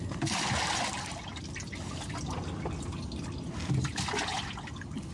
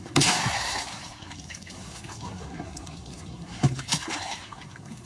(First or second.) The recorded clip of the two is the first